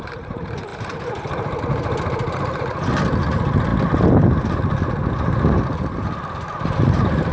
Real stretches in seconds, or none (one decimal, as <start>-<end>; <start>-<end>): 0.0-7.3